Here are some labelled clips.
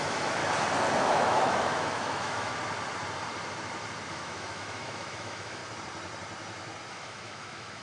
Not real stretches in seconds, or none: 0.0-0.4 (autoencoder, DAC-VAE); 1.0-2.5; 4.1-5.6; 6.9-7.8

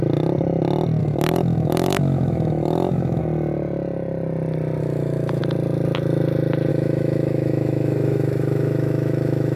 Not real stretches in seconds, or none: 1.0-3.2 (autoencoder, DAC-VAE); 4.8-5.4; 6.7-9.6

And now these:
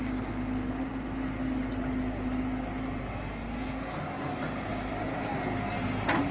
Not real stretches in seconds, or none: none